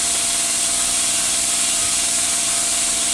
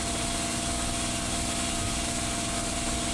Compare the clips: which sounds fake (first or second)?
first